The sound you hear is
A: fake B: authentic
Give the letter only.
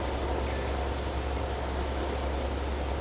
B